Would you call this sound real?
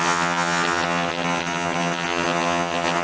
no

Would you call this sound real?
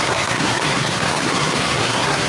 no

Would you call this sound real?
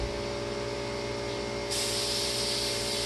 yes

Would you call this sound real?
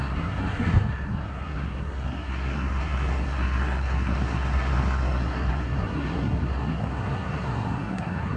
no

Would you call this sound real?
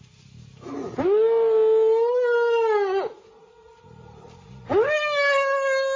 yes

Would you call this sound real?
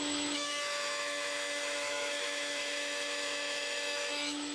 no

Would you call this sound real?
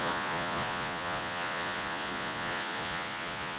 no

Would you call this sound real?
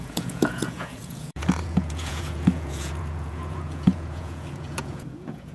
no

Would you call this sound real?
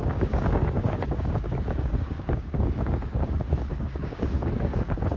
no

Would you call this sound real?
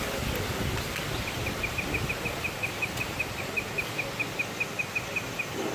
yes